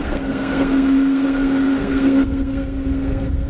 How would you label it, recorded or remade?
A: remade